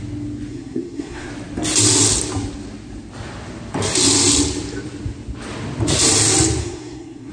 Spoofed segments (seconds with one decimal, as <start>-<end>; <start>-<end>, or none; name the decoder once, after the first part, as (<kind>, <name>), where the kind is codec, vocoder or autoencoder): 0.5-1.3 (codec, SNAC); 6.6-7.3

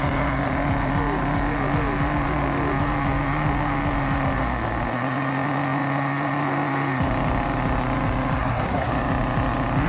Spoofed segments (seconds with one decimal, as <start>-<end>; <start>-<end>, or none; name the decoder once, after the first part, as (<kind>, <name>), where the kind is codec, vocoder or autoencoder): 8.4-8.9 (codec, SNAC)

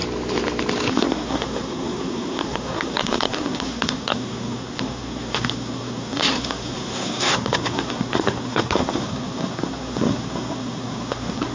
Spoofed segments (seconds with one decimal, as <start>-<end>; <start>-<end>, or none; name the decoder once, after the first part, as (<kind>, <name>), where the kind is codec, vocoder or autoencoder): 0.9-11.5 (codec, SNAC)

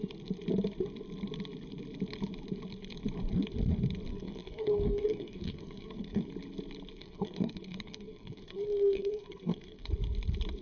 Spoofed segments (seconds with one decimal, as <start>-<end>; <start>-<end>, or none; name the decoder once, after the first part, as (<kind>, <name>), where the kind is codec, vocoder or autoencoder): 4.1-6.3 (codec, SNAC); 7.0-9.9

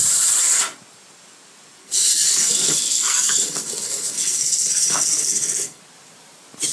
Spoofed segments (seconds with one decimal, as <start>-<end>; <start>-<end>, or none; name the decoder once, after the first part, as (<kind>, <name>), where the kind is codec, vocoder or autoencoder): 1.8-5.8 (codec, SNAC)

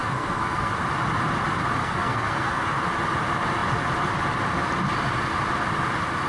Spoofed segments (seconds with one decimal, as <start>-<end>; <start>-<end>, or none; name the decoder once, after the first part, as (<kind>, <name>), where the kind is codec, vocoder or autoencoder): 0.0-0.7 (codec, SNAC); 1.8-2.8

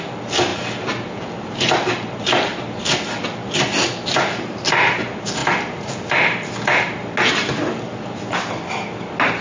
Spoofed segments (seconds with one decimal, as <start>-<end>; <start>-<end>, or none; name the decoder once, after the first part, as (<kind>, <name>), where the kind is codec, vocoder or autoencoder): none

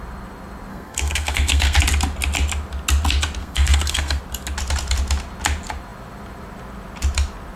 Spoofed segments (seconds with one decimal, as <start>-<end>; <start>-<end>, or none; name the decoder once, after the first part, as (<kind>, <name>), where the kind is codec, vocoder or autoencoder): 0.7-1.8 (codec, SNAC); 3.4-4.2